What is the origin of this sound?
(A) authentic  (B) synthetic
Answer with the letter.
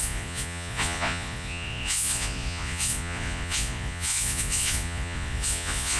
B